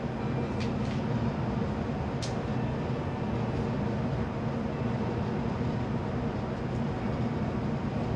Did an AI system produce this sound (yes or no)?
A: no